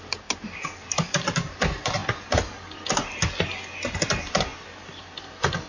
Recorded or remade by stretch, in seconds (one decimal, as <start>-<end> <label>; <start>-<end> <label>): 0.0-2.0 remade; 2.0-3.9 recorded; 3.9-4.5 remade; 4.5-5.7 recorded